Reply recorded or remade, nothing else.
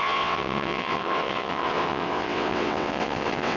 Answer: remade